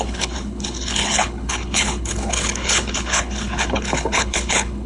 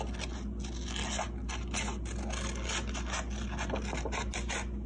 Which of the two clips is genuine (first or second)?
second